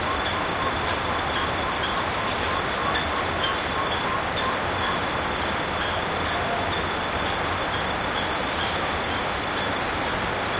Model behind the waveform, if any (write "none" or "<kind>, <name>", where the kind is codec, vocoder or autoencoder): none